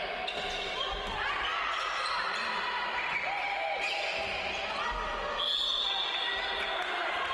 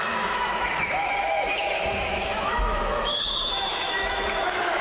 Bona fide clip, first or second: first